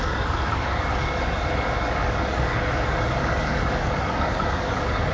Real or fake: fake